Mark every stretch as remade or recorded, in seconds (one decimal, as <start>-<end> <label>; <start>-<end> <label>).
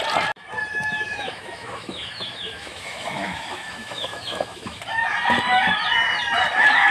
0.0-0.7 recorded; 0.7-4.8 remade; 4.8-6.9 recorded